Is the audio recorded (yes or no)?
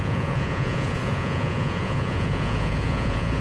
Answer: no